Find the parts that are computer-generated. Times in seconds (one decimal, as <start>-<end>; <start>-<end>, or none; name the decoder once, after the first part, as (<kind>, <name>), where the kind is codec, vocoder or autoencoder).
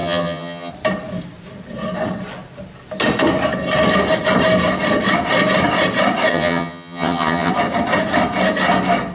0.0-0.7 (vocoder, HiFi-GAN); 6.3-7.5